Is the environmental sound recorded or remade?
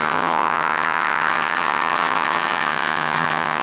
remade